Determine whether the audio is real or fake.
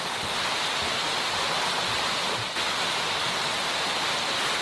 real